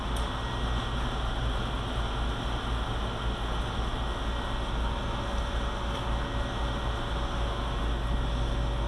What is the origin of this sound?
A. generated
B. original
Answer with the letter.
B